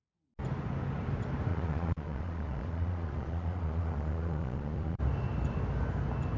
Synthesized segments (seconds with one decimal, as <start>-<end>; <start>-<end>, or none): 1.5-5.0

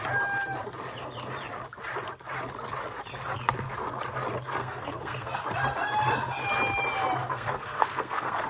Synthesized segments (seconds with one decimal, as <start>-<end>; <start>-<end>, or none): 4.6-5.4; 7.2-8.5